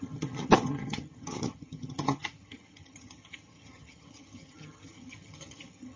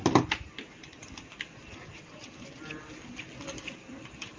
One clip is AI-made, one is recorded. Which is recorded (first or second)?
second